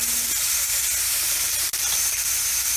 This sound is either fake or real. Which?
real